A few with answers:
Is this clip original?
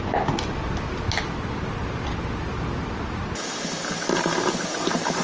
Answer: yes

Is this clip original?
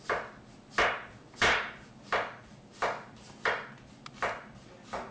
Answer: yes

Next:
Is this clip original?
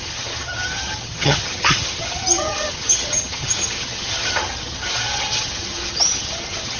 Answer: no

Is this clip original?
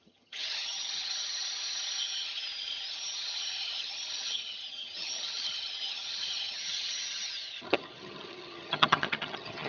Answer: no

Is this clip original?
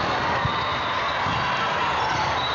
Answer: yes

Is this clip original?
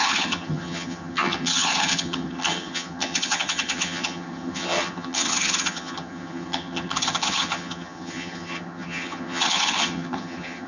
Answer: no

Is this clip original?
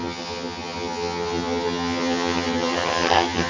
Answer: no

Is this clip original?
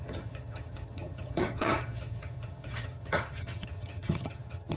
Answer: no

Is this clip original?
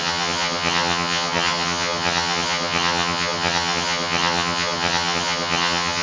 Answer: no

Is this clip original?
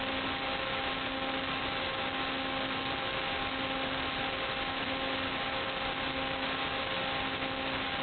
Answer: yes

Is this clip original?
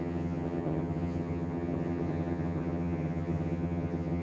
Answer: no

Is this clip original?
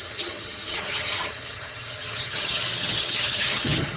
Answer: no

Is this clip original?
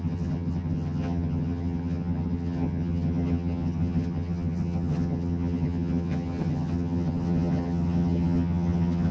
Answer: no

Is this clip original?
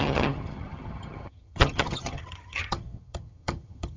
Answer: no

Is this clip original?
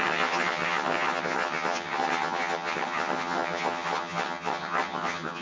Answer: no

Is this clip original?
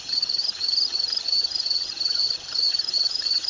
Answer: no